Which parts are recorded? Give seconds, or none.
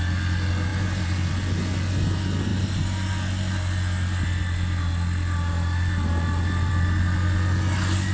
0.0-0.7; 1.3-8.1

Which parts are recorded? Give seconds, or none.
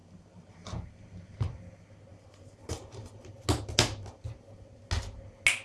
1.6-2.1; 3.2-5.6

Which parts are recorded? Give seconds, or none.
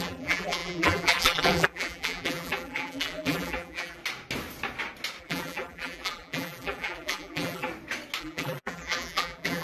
4.0-5.2; 7.7-8.2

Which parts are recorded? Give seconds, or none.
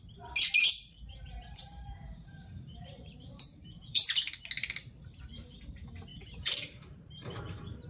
0.0-0.6; 4.0-6.1; 7.4-7.9